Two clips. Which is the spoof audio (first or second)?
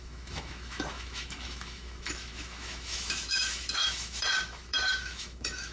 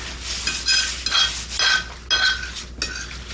first